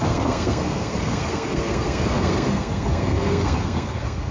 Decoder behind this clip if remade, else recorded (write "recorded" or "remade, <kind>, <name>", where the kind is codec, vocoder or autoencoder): remade, codec, SNAC